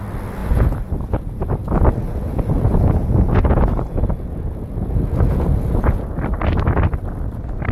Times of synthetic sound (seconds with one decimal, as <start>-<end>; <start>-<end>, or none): 0.4-1.6; 2.0-6.1